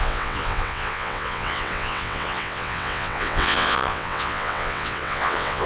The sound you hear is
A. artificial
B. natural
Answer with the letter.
A